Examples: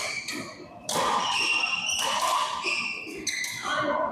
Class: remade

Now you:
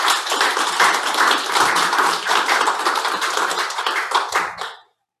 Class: remade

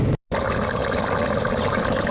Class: recorded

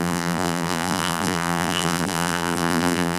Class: remade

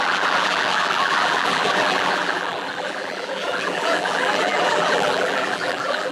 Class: remade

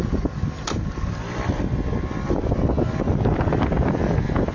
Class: recorded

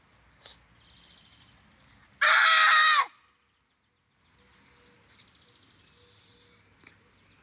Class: recorded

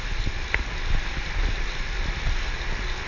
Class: recorded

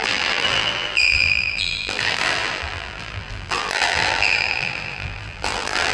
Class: remade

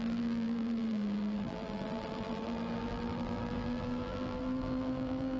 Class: remade